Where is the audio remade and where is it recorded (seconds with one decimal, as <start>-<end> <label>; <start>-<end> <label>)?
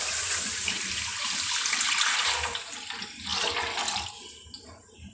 0.0-5.1 recorded